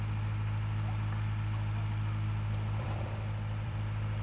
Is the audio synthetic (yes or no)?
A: yes